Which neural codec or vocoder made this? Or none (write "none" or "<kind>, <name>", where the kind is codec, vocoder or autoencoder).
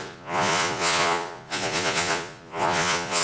vocoder, Vocos